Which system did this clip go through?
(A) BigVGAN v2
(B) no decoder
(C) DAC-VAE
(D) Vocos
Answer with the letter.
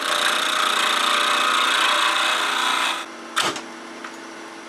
B